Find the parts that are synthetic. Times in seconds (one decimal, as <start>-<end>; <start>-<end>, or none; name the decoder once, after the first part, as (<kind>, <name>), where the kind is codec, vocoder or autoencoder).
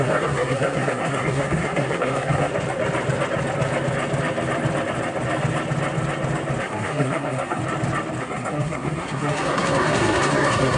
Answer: 0.0-2.5 (codec, SNAC); 6.6-7.6; 8.2-10.8